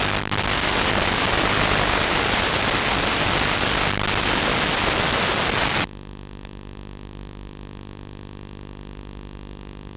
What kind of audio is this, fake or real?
real